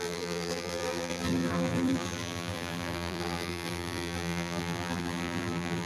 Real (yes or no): no